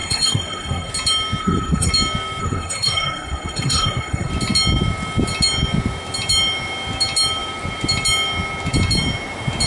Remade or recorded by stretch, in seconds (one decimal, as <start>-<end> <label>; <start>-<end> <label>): 0.0-0.9 remade; 0.9-1.4 recorded; 1.4-1.9 remade; 1.9-2.4 recorded; 2.4-4.3 remade; 4.3-9.7 recorded